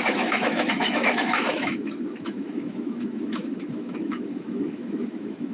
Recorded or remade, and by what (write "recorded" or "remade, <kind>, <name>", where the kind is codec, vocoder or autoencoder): remade, autoencoder, DAC-VAE